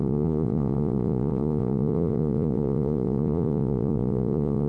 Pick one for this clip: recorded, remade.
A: remade